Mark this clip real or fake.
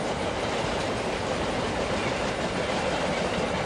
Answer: real